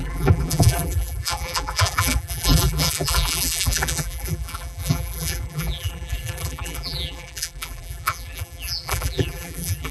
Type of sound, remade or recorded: remade